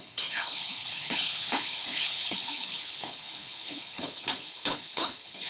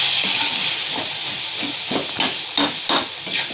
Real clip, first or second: second